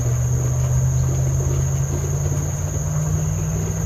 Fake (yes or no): no